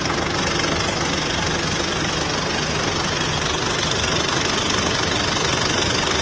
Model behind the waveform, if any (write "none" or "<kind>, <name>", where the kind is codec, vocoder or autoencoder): none